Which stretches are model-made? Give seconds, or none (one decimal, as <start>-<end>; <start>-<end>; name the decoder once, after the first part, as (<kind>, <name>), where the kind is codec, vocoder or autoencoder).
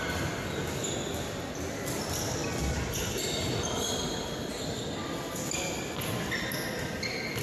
none